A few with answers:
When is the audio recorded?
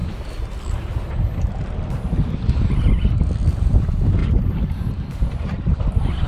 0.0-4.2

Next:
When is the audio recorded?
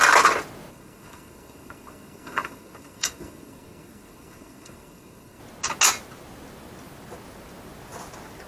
0.0-0.7; 5.4-8.5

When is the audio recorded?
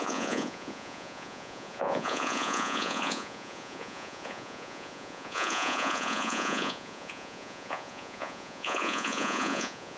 none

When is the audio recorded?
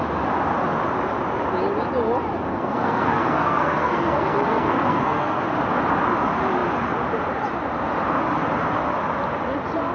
0.0-2.5; 5.4-9.9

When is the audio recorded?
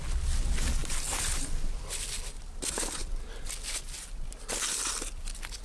0.0-5.6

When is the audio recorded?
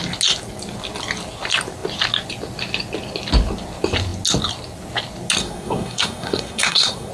0.0-5.4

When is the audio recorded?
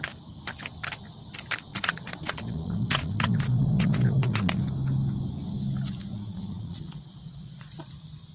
0.0-1.7; 4.6-6.1; 7.9-8.3